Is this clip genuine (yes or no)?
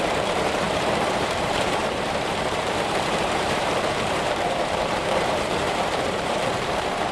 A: no